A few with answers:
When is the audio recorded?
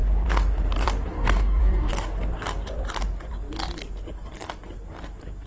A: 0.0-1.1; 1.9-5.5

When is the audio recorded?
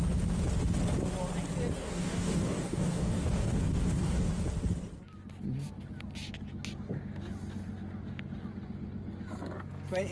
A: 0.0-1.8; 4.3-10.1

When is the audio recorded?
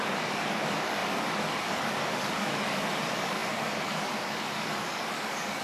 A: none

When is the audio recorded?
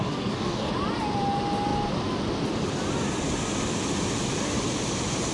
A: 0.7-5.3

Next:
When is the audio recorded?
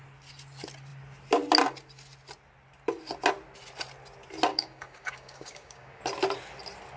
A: 0.0-4.5; 6.0-7.0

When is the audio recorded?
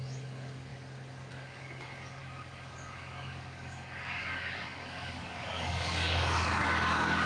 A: 0.7-1.3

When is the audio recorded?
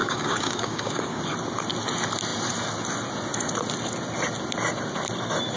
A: 1.2-5.6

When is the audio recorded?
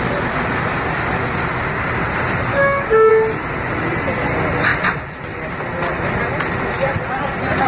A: 0.0-2.5; 3.1-7.7